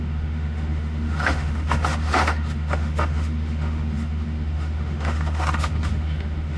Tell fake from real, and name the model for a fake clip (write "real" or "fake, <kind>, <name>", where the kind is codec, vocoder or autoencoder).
fake, autoencoder, DAC-VAE